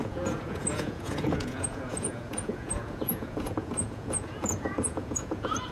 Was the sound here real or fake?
fake